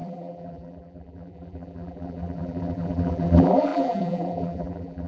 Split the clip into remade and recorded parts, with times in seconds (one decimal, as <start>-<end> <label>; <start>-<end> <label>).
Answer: 0.0-5.1 remade